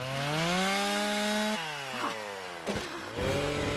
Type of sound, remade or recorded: recorded